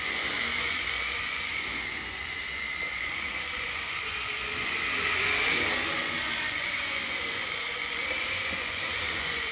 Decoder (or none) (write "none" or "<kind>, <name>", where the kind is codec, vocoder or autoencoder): vocoder, Vocos